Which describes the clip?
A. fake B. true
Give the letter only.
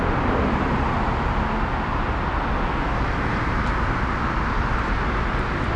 B